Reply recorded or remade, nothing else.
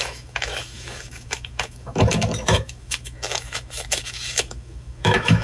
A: remade